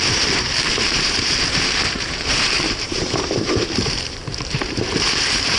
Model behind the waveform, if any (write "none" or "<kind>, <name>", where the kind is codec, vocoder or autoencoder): vocoder, BigVGAN v2